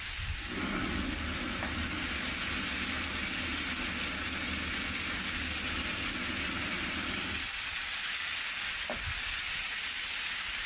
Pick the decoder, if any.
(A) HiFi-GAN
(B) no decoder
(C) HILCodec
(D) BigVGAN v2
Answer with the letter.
B